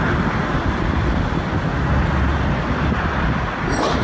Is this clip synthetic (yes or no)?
no